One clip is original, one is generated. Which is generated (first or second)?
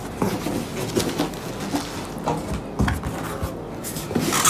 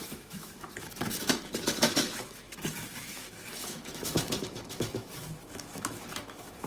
second